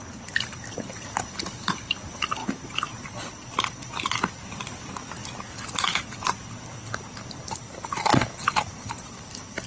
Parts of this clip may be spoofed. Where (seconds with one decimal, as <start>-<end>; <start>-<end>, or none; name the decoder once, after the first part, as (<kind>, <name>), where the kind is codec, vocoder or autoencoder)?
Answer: 0.0-2.4 (vocoder, BigVGAN v2); 7.2-9.7